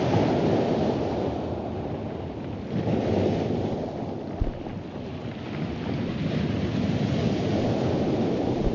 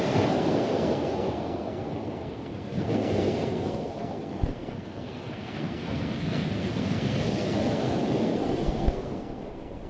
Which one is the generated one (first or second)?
second